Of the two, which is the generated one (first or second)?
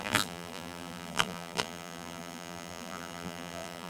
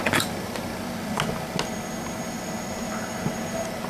first